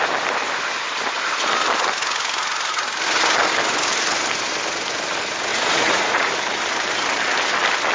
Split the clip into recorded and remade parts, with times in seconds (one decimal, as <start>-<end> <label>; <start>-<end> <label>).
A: 0.0-5.5 recorded; 5.5-6.3 remade; 6.3-7.9 recorded